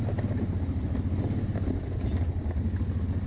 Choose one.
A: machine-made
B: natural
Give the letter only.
B